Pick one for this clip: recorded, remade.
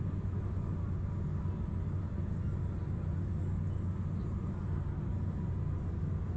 recorded